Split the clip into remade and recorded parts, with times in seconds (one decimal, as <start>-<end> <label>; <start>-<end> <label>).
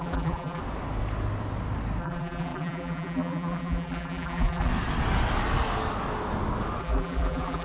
0.0-0.6 remade; 0.6-2.0 recorded; 2.0-4.7 remade; 4.7-6.8 recorded; 6.8-7.6 remade